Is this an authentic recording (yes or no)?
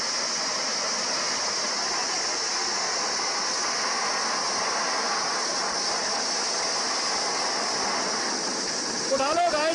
yes